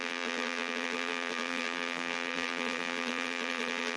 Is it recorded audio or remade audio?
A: remade